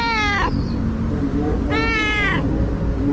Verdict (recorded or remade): recorded